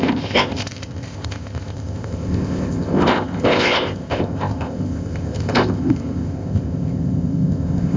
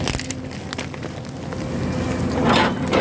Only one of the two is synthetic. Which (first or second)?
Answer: first